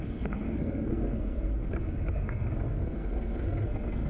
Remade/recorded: remade